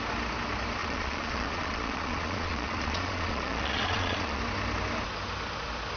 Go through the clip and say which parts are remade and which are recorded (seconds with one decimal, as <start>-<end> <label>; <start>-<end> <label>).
0.0-0.8 recorded; 0.8-4.4 remade; 4.4-6.0 recorded